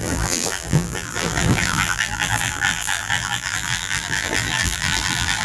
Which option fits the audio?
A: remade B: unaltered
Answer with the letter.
A